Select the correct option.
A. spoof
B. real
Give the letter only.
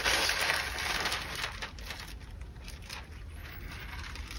B